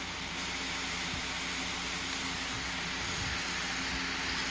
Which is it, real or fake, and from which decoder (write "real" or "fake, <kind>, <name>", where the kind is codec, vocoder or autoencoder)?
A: real